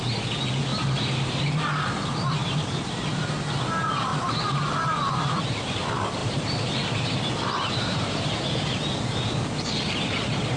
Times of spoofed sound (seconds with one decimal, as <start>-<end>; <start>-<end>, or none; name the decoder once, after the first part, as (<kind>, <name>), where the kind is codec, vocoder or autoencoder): 0.7-1.5 (vocoder, BigVGAN v2); 2.4-3.3; 4.1-5.4; 6.2-8.4